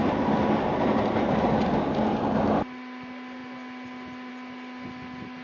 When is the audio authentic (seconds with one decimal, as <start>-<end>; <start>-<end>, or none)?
0.0-5.4